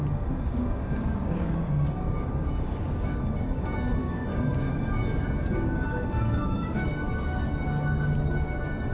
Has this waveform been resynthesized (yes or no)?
yes